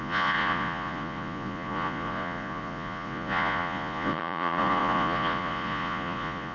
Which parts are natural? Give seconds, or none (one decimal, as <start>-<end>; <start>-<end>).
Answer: none